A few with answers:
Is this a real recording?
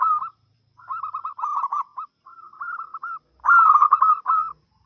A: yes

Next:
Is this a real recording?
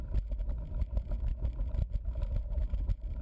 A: yes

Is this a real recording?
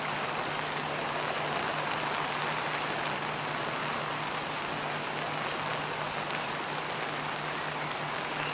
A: yes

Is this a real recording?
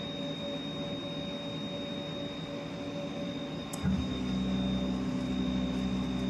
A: yes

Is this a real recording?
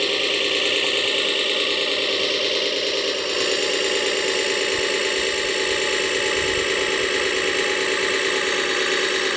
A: yes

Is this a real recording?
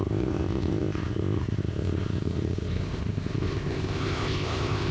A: no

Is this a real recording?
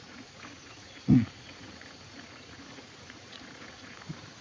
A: no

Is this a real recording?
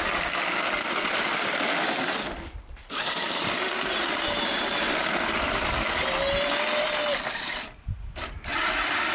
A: yes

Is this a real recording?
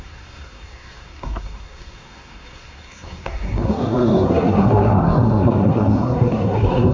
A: no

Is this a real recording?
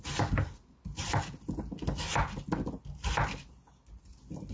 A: yes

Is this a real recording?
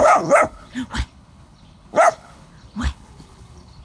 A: no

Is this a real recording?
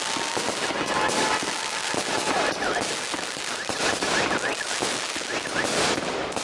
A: yes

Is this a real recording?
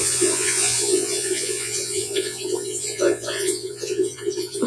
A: no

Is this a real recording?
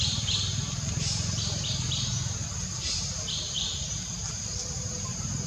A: no